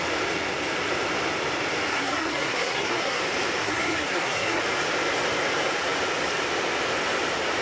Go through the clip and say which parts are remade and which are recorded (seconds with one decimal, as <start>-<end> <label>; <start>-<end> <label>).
0.0-1.9 recorded; 1.9-3.2 remade; 3.2-3.6 recorded; 3.6-4.6 remade; 4.6-7.6 recorded